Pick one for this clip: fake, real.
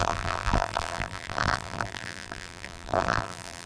fake